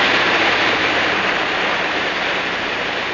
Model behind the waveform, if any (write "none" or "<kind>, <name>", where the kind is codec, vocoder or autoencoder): vocoder, BigVGAN v2